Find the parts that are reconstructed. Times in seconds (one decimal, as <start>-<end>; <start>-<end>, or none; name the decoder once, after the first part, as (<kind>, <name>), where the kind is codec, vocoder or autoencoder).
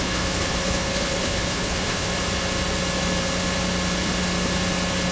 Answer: 0.0-2.1 (codec, HILCodec)